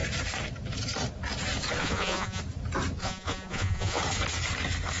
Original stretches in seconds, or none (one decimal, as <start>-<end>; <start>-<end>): 0.0-1.8; 2.4-3.0; 4.0-5.0